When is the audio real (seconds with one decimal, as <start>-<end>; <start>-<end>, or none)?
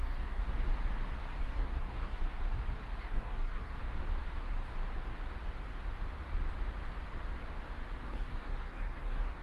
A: 0.4-1.4; 2.2-3.0; 3.7-8.1